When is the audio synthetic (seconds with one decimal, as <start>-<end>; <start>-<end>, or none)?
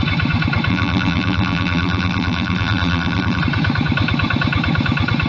0.7-3.4